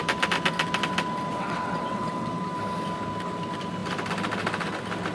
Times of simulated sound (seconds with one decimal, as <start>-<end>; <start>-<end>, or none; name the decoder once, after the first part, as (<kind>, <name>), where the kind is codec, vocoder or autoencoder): 1.3-2.4 (vocoder, WaveNeXt)